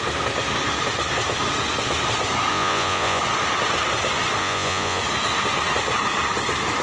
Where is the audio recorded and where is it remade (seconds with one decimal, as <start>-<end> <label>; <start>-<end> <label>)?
0.0-2.5 recorded; 2.5-3.2 remade; 3.2-4.4 recorded; 4.4-5.0 remade; 5.0-6.8 recorded